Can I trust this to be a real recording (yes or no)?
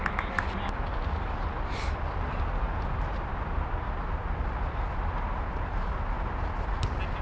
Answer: yes